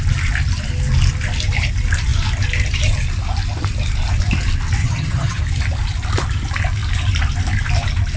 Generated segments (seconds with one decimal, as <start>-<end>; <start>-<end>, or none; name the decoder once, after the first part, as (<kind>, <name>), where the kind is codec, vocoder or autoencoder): 4.8-5.4 (vocoder, HiFi-GAN)